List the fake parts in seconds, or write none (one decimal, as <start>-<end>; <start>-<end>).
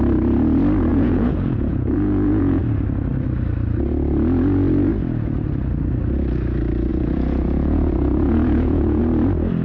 0.9-2.6; 6.9-9.0